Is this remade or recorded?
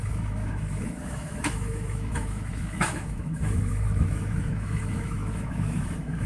remade